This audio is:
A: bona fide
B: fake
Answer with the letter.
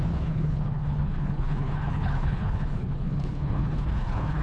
B